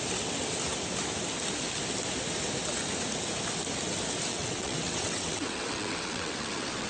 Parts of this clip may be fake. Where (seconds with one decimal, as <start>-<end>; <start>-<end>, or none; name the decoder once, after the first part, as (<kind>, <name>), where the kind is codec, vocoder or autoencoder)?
4.3-6.9 (vocoder, WaveNeXt)